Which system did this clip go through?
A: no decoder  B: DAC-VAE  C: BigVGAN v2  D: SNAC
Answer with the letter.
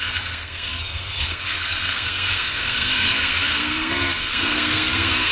D